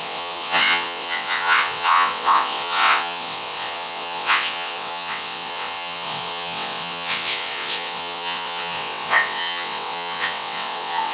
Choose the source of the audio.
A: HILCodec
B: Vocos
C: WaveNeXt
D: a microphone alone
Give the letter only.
C